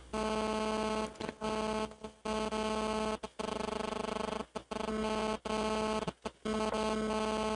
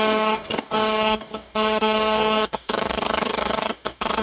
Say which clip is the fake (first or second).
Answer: second